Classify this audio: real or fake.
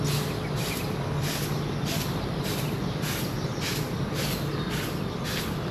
real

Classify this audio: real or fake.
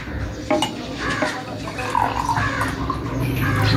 real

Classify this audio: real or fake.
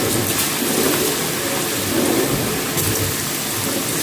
real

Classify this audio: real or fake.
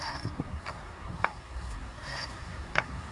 fake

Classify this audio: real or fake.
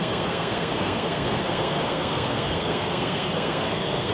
fake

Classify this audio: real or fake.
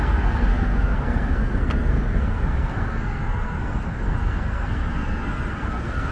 fake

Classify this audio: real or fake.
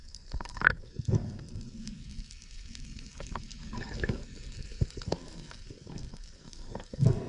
fake